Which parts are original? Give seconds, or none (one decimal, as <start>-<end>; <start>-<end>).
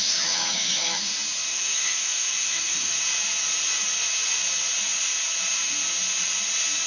1.1-1.5; 2.9-6.9